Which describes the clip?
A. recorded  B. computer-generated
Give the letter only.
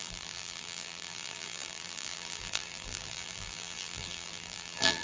B